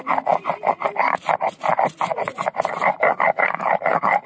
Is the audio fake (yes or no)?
no